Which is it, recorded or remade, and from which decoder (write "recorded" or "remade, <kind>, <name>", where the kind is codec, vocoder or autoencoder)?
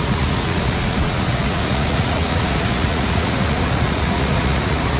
remade, vocoder, Vocos